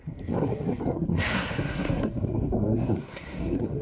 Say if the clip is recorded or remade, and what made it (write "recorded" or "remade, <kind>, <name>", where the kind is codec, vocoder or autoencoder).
remade, codec, SNAC